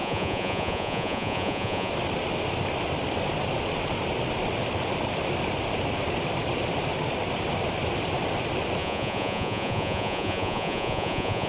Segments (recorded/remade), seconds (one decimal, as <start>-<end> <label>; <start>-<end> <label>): 0.0-1.9 remade; 1.9-8.8 recorded; 8.8-11.5 remade